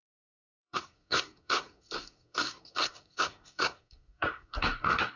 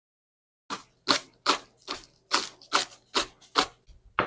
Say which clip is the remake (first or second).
first